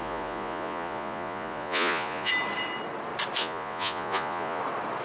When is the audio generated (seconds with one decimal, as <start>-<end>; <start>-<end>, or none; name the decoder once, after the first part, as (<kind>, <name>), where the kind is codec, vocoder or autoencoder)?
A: 0.0-2.3 (vocoder, Vocos); 3.4-4.6